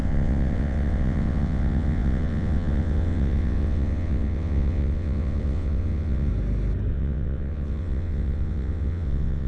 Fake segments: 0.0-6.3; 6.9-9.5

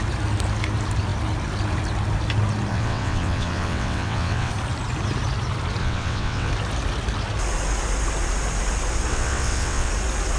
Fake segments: 2.7-4.5; 5.8-6.5; 9.1-9.9

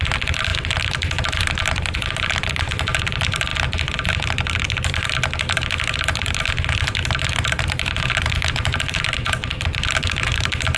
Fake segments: none

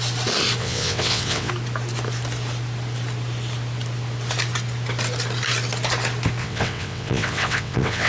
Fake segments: 0.6-1.5; 6.4-8.1